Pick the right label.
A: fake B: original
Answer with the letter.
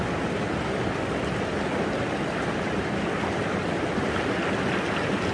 B